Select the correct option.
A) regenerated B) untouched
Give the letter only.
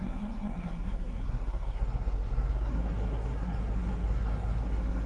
A